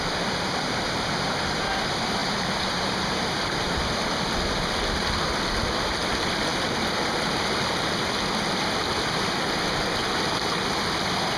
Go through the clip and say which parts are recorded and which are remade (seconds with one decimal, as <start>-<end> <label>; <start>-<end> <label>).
0.0-2.2 recorded; 2.2-3.8 remade; 3.8-11.4 recorded